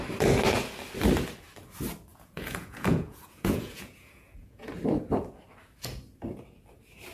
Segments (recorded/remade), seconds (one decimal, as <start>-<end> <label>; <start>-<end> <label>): 0.0-2.1 recorded; 2.1-4.7 remade; 4.7-7.1 recorded

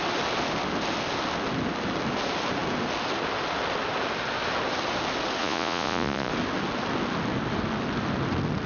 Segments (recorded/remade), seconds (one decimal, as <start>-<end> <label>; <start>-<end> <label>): 0.0-5.4 recorded; 5.4-6.3 remade; 6.3-8.7 recorded

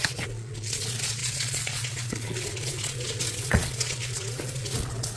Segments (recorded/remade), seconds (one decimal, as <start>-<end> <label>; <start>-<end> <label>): 0.0-5.2 remade

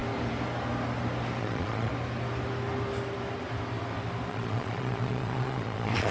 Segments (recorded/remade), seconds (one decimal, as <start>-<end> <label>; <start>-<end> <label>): 0.0-1.4 recorded; 1.4-1.9 remade; 1.9-4.3 recorded; 4.3-6.1 remade

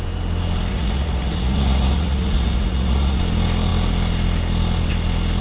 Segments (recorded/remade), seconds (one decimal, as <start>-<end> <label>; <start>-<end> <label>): 0.0-0.7 recorded; 0.7-3.2 remade; 3.2-5.4 recorded

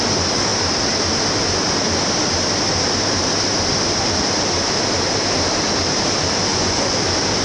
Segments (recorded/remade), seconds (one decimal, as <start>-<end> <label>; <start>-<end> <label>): 0.0-6.5 recorded; 6.5-7.0 remade; 7.0-7.4 recorded